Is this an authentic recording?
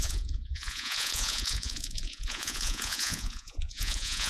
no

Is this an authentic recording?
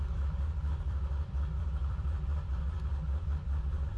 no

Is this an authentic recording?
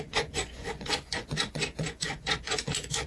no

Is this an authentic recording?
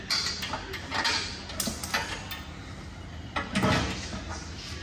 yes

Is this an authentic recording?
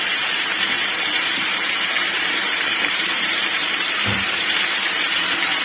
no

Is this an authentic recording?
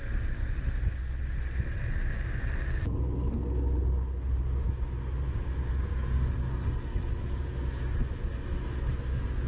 yes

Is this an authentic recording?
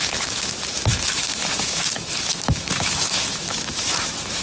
no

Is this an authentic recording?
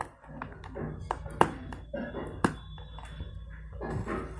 yes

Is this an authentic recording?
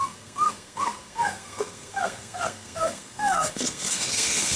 no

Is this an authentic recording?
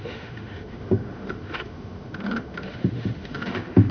no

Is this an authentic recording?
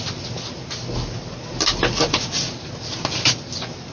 yes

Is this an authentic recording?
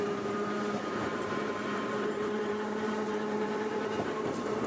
no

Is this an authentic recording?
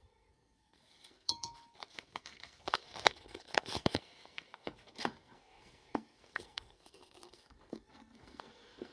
no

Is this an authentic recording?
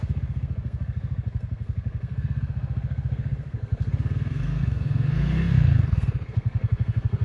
no